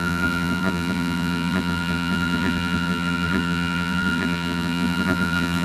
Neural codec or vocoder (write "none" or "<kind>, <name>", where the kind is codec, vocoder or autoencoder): vocoder, BigVGAN v2